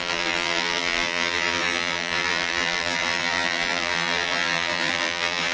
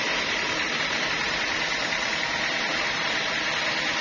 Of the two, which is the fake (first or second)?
first